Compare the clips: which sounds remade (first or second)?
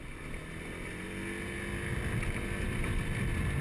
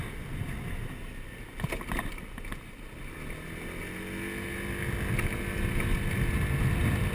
first